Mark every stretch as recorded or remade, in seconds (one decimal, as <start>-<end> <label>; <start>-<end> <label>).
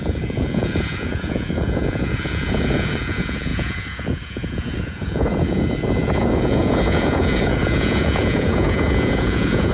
0.0-9.7 remade